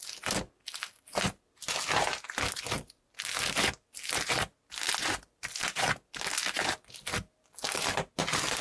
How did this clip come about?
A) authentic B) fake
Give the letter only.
A